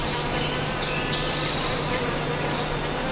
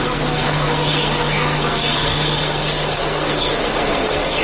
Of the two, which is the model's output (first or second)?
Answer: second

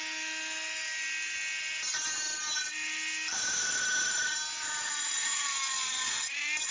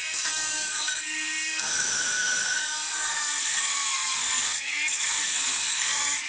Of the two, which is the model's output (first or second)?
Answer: second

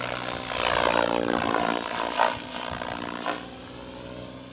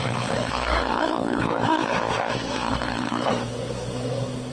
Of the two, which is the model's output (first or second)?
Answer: second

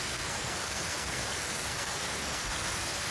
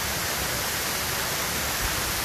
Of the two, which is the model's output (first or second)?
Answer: first